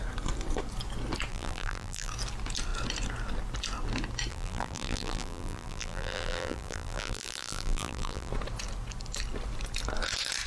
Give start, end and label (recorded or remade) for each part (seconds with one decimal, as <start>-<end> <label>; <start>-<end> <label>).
0.0-1.3 recorded; 1.3-2.1 remade; 2.1-4.3 recorded; 4.3-8.3 remade; 8.3-10.5 recorded